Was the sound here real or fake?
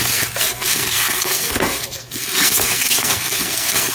fake